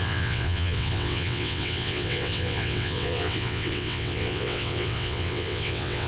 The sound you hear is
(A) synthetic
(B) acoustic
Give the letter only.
A